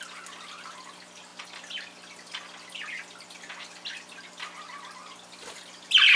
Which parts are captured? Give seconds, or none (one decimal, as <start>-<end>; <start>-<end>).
0.0-6.2